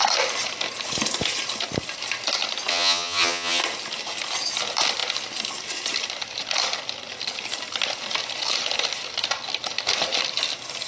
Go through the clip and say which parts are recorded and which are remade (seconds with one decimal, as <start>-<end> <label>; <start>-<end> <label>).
0.0-2.7 recorded; 2.7-3.6 remade; 3.6-10.9 recorded